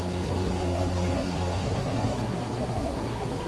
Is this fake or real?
fake